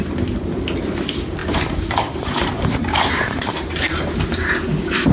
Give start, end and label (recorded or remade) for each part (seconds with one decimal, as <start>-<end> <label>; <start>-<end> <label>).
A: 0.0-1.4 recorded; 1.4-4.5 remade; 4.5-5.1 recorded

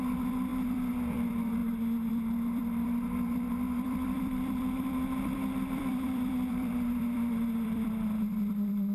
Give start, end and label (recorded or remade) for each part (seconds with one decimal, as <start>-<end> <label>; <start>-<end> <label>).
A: 0.0-1.6 remade; 1.6-2.1 recorded; 2.1-8.9 remade

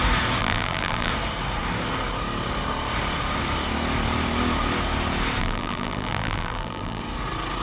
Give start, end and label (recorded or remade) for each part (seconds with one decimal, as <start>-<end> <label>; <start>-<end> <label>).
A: 0.0-0.4 recorded; 0.4-1.1 remade; 1.1-5.4 recorded; 5.4-7.0 remade; 7.0-7.6 recorded

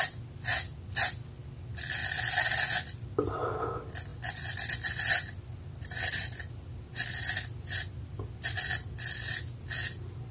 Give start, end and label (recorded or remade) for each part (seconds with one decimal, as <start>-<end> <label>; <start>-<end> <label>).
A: 0.0-4.1 recorded; 4.1-8.7 remade; 8.7-10.3 recorded

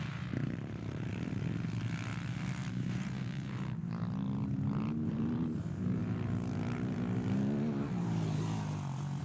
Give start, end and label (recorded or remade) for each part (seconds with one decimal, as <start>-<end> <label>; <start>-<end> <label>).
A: 0.0-1.1 remade; 1.1-2.7 recorded; 2.7-4.0 remade; 4.0-5.1 recorded; 5.1-6.0 remade; 6.0-9.2 recorded

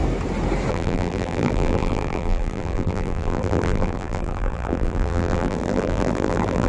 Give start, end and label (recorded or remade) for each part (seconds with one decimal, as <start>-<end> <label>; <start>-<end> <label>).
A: 0.0-0.7 recorded; 0.7-6.7 remade

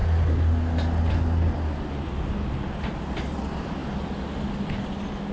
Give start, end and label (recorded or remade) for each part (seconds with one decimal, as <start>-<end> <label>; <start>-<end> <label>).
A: 0.0-5.3 recorded

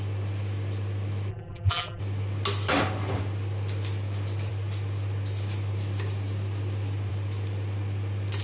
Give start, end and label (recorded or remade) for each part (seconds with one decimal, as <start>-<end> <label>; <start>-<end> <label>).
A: 0.0-1.3 recorded; 1.3-2.0 remade; 2.0-8.4 recorded